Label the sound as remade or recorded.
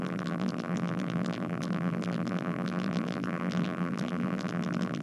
remade